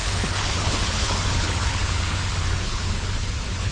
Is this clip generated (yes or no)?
yes